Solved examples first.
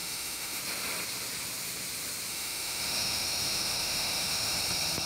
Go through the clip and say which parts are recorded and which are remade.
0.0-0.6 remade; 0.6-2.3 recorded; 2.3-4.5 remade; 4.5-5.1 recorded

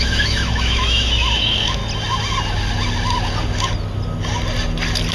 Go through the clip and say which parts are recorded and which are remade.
0.0-1.8 remade; 1.8-5.1 recorded

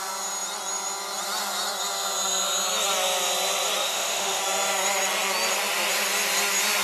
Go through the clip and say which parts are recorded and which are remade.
0.0-3.8 recorded; 3.8-4.4 remade; 4.4-6.8 recorded

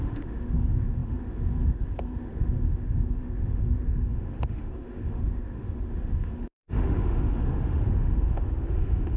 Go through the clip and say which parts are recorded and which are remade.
0.0-9.2 remade

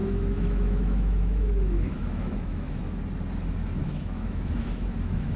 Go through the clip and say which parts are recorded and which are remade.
0.0-2.8 remade; 2.8-3.8 recorded; 3.8-5.4 remade

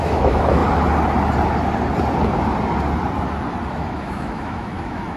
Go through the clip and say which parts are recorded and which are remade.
0.0-0.6 remade; 0.6-3.7 recorded; 3.7-5.2 remade